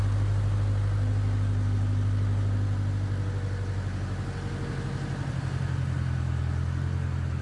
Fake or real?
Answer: real